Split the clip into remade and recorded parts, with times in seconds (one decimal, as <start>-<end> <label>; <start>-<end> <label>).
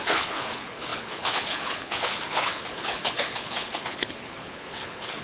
0.0-5.2 remade